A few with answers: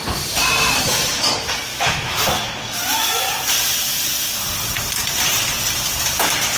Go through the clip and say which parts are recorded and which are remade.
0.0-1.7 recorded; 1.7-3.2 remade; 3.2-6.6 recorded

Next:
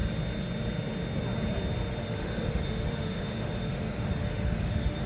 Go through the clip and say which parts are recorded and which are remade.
0.0-1.9 recorded; 1.9-5.1 remade

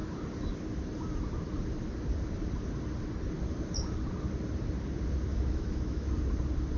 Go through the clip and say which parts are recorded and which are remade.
0.0-5.3 recorded; 5.3-6.1 remade; 6.1-6.8 recorded

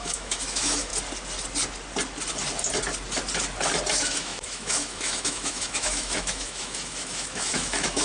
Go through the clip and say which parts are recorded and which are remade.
0.0-0.9 remade; 0.9-3.9 recorded; 3.9-8.0 remade

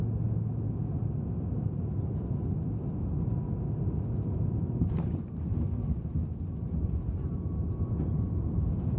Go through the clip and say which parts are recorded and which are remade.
0.0-9.0 recorded

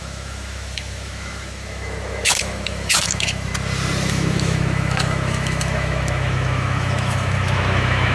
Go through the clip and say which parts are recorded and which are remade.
0.0-3.5 remade; 3.5-4.1 recorded; 4.1-8.1 remade

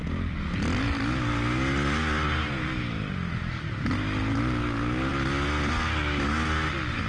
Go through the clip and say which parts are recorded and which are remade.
0.0-7.1 recorded

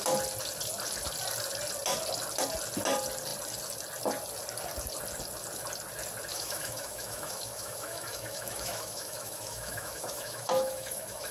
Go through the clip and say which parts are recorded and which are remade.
0.0-6.3 recorded; 6.3-11.3 remade